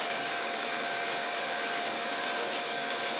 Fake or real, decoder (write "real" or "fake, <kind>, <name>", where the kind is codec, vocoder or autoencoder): fake, codec, DAC